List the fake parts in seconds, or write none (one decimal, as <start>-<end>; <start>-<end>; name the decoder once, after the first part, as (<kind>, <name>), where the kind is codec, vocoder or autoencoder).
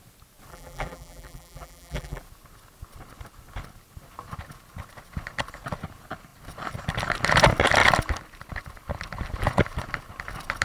0.5-2.2 (vocoder, BigVGAN v2)